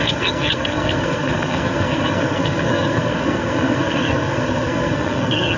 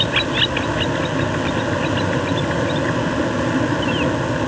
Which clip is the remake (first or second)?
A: first